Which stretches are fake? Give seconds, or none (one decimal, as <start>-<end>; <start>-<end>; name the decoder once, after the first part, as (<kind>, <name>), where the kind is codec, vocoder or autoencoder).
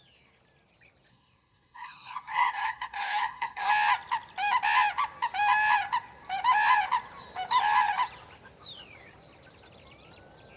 1.1-3.7 (codec, SNAC)